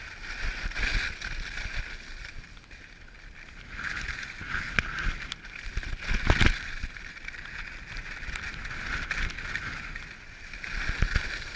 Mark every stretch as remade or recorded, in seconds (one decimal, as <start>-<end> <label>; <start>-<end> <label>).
0.0-11.6 recorded